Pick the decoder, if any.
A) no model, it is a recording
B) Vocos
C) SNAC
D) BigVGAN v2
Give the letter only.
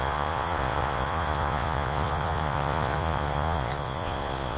B